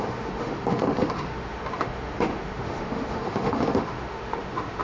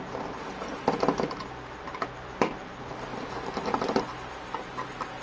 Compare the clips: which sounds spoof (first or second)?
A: first